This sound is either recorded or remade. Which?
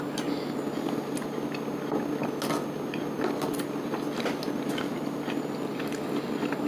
recorded